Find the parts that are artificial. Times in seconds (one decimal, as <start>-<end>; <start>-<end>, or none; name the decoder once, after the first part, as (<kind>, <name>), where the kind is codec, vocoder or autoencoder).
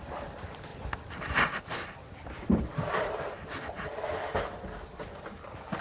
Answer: none